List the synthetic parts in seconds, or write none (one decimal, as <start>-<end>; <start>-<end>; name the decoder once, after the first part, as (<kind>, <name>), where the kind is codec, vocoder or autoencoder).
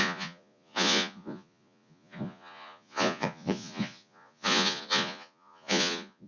0.0-6.3 (vocoder, Vocos)